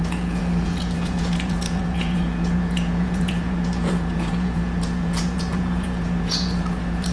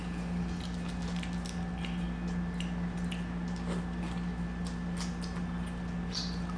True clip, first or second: second